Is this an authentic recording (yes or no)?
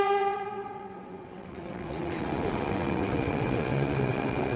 no